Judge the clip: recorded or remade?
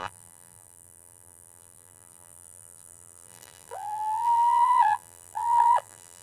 remade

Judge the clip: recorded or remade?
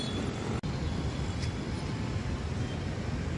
remade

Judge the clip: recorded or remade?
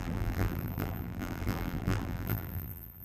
remade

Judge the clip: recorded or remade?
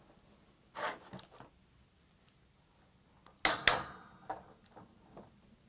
recorded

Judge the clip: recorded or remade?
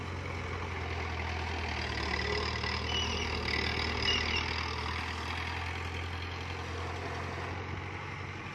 recorded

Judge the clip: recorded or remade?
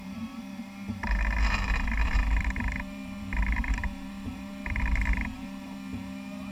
remade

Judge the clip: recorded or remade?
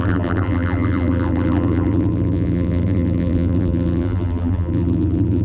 remade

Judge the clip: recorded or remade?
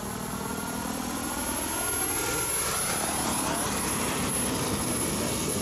recorded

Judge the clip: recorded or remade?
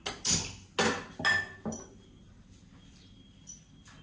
recorded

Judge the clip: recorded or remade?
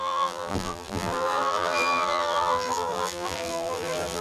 remade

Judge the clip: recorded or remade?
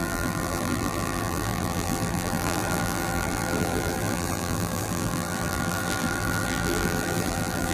remade